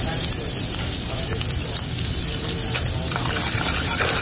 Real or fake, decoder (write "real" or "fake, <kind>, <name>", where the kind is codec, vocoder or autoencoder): fake, vocoder, BigVGAN v2